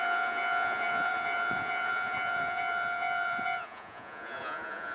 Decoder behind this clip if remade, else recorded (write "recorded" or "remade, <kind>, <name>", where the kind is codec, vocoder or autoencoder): remade, vocoder, Vocos